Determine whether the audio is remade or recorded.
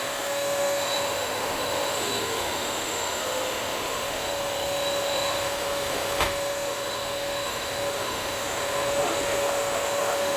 remade